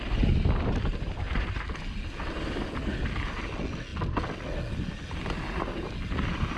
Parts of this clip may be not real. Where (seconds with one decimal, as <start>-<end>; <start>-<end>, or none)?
none